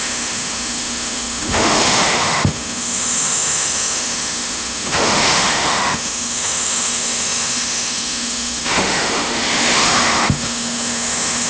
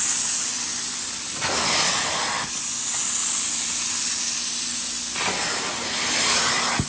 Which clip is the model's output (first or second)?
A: first